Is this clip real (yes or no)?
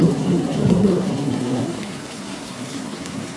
no